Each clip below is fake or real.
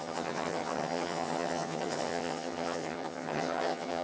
fake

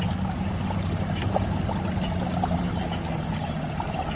real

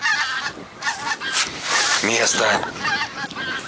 real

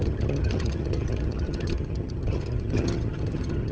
fake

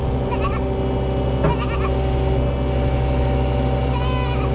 real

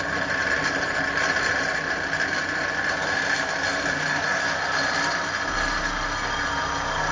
real